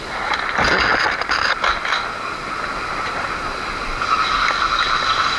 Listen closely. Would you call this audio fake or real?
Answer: real